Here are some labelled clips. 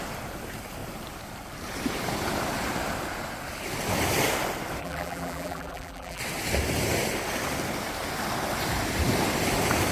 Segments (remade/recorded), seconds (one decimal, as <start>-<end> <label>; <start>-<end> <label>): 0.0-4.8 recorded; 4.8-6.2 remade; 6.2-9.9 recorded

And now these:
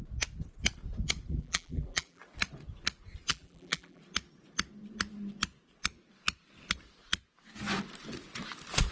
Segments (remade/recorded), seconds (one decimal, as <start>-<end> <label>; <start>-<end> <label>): 0.0-1.3 recorded; 1.3-2.2 remade; 2.2-3.3 recorded; 3.3-4.0 remade; 4.0-8.9 recorded

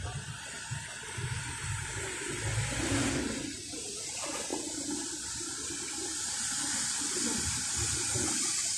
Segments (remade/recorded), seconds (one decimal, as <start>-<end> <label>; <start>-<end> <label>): 0.0-1.2 recorded; 1.2-2.0 remade; 2.0-8.8 recorded

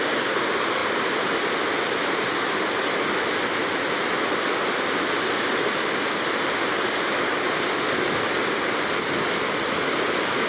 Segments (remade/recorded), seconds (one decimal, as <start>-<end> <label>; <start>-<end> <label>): 0.0-10.5 recorded

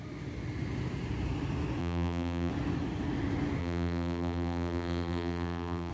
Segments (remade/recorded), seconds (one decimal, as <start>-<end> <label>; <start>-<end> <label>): 0.0-1.8 recorded; 1.8-2.5 remade; 2.5-3.6 recorded; 3.6-5.9 remade